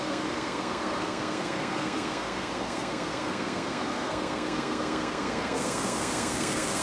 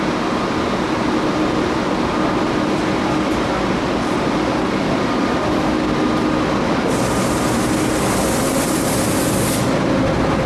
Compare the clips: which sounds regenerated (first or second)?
first